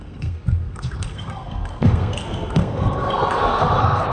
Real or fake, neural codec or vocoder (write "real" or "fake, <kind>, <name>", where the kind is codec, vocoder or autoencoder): fake, codec, SNAC